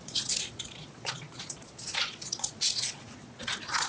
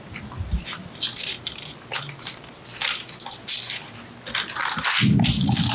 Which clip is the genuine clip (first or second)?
second